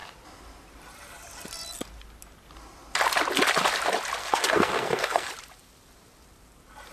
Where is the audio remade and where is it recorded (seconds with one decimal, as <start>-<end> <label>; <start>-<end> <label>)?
0.0-4.2 recorded; 4.2-5.3 remade; 5.3-6.9 recorded